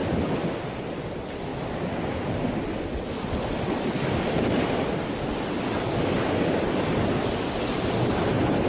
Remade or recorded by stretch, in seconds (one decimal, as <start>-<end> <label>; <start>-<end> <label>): 0.0-8.7 recorded